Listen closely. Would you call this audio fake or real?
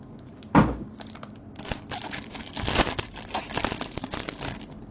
real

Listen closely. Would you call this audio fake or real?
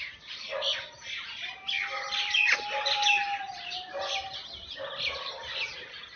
real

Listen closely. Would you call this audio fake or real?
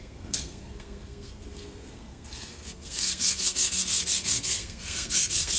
fake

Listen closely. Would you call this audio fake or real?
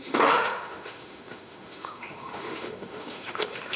fake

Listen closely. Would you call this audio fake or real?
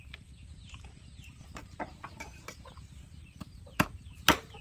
fake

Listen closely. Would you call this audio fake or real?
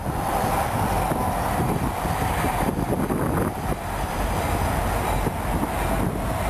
real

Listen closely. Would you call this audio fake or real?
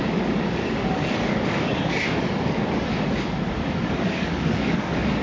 fake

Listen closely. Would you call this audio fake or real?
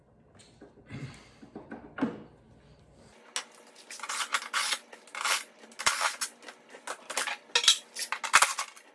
real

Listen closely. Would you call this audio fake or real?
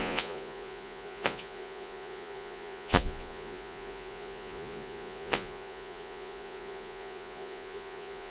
fake